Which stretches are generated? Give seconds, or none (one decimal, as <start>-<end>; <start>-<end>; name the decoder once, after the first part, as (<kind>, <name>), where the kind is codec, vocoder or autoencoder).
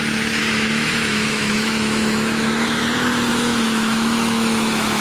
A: 0.4-2.8 (autoencoder, DAC-VAE); 3.3-5.0